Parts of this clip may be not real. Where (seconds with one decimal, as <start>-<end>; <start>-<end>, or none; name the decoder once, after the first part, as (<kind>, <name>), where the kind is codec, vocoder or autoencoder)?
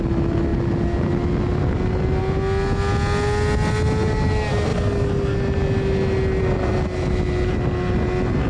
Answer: none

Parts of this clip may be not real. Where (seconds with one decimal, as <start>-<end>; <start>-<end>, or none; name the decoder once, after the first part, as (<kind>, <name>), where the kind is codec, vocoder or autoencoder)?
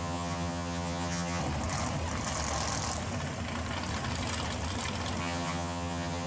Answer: 0.0-1.4 (vocoder, HiFi-GAN); 5.2-6.3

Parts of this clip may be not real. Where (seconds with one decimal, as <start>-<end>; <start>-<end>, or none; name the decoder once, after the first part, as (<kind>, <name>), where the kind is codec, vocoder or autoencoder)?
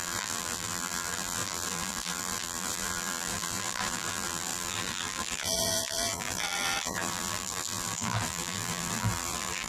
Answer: 0.0-9.7 (vocoder, BigVGAN v2)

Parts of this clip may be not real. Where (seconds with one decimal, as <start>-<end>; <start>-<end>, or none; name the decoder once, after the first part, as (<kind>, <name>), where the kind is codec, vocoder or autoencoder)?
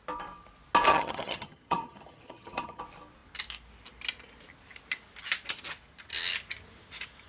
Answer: 0.9-2.8 (vocoder, HiFi-GAN)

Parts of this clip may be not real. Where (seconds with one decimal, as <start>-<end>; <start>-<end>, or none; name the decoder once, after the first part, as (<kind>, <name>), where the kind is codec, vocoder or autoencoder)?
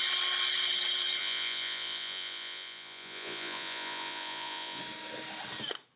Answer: 1.2-4.8 (vocoder, Vocos)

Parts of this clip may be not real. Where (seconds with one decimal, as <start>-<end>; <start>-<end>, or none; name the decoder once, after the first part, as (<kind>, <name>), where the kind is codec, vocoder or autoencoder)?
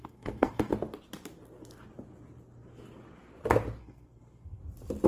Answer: 0.0-0.7 (codec, SNAC); 3.8-4.6